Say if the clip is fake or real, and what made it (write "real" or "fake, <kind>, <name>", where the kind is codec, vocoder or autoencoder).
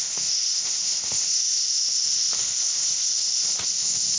fake, codec, ZipCodec